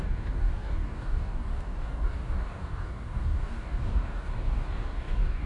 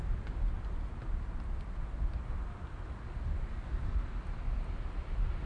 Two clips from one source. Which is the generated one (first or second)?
first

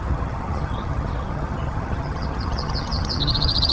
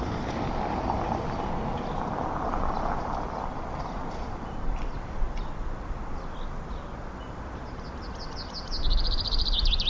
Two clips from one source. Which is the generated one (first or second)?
first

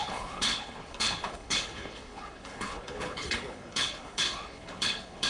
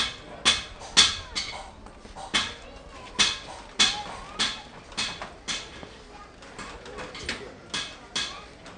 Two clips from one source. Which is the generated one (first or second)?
first